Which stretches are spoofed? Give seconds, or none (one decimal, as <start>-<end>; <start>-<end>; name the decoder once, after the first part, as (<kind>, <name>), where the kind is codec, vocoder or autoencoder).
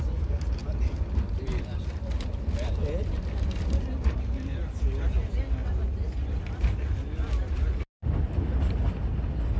none